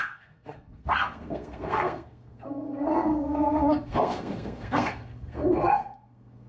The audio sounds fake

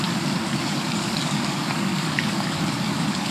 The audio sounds fake